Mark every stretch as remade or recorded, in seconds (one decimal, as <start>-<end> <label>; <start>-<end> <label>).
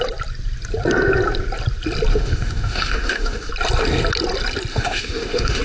0.0-2.1 recorded; 2.1-3.5 remade; 3.5-4.7 recorded; 4.7-5.6 remade